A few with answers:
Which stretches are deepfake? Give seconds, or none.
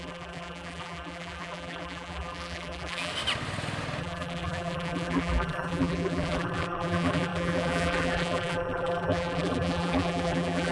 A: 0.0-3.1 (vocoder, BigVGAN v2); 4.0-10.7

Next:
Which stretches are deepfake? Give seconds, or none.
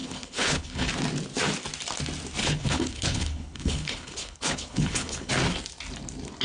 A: 0.0-0.9 (codec, HILCodec); 2.4-5.3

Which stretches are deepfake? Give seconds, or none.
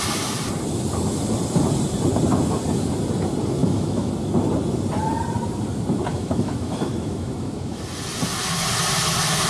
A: 3.6-4.1 (autoencoder, DAC-VAE); 6.1-7.8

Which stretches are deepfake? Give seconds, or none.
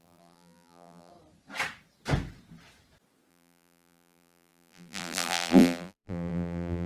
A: 0.0-1.1 (vocoder, BigVGAN v2); 3.3-6.9